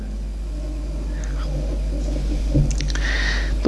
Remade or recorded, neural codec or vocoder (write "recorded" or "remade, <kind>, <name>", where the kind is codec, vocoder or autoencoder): recorded